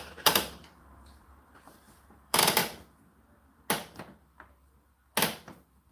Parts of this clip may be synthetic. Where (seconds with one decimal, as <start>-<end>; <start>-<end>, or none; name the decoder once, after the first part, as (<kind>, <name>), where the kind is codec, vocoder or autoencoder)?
0.0-2.6 (vocoder, BigVGAN v2)

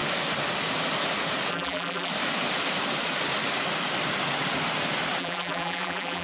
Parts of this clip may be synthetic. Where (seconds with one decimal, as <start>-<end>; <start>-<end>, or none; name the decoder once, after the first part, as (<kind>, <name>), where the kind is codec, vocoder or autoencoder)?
1.5-2.1 (vocoder, BigVGAN v2); 5.2-6.2

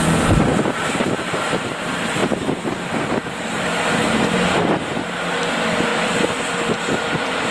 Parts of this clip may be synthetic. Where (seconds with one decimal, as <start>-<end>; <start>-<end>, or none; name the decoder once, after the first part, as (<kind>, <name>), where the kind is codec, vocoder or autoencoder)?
0.0-5.9 (vocoder, BigVGAN v2); 6.8-7.5

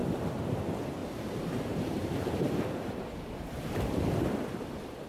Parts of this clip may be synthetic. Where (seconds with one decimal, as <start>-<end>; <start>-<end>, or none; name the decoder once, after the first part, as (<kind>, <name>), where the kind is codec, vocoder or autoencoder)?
0.0-0.6 (vocoder, BigVGAN v2); 1.0-4.1

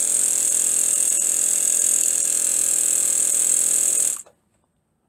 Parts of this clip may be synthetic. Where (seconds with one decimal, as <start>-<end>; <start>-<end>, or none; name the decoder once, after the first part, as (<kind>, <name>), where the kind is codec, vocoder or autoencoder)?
none

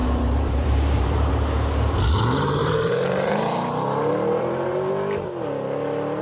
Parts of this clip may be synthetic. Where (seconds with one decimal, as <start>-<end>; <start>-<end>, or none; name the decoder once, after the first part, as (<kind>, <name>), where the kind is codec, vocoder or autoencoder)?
0.0-1.3 (vocoder, BigVGAN v2); 2.6-4.9

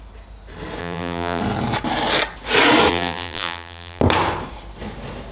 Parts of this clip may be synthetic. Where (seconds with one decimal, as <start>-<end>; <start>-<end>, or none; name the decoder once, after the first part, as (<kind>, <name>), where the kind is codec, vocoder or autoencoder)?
0.8-1.4 (vocoder, BigVGAN v2); 2.9-4.0

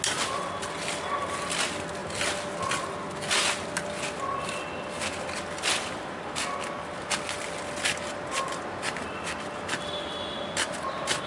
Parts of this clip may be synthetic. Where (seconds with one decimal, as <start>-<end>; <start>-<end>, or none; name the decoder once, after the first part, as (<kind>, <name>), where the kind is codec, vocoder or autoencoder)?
none